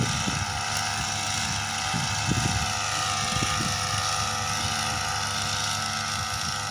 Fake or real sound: real